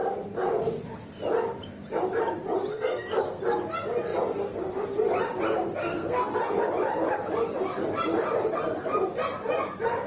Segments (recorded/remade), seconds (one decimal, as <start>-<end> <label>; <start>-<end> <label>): 0.0-2.7 recorded; 2.7-3.4 remade; 3.4-5.8 recorded; 5.8-6.4 remade; 6.4-10.1 recorded